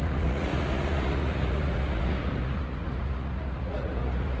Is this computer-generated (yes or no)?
yes